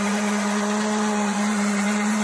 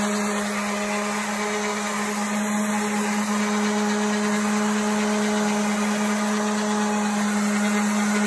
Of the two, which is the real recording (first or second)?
second